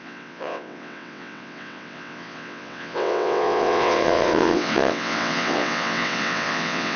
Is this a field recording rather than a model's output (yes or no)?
no